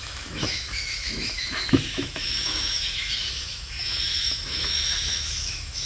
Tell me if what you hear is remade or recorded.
remade